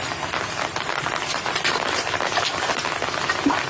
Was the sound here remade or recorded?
recorded